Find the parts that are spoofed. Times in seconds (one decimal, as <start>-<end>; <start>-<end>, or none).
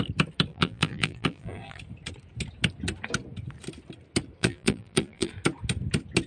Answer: 0.5-1.8; 4.4-5.3